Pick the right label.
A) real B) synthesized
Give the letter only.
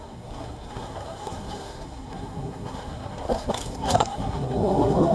B